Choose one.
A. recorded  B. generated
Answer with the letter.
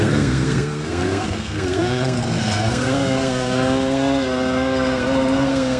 B